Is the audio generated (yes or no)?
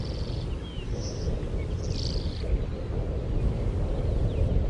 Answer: no